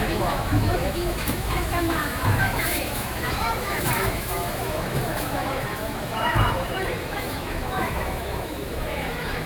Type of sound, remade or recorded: remade